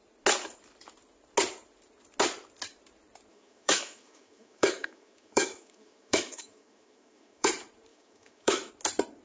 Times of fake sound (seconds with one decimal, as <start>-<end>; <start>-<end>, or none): 3.3-7.5; 7.9-8.7